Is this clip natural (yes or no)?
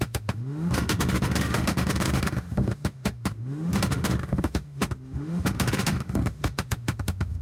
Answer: no